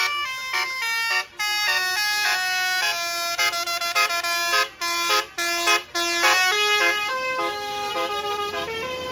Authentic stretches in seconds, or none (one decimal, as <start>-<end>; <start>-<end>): 0.0-7.1; 7.9-9.1